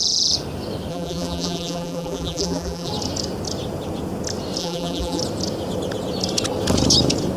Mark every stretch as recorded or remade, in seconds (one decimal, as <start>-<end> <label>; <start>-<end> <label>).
0.0-0.9 recorded; 0.9-2.9 remade; 2.9-4.6 recorded; 4.6-5.2 remade; 5.2-7.4 recorded